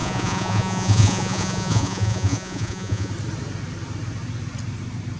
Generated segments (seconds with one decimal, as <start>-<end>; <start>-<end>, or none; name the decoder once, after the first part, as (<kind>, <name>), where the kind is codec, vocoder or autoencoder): 0.0-3.1 (vocoder, Vocos)